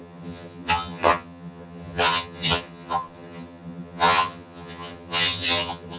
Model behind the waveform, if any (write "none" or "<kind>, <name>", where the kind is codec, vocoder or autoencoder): vocoder, HiFi-GAN